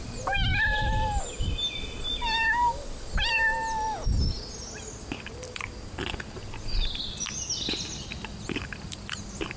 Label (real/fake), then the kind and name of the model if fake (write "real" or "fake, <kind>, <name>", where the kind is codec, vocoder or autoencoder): real